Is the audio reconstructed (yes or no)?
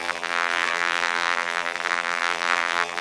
yes